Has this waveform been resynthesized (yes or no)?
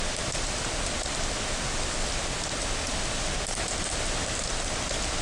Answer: no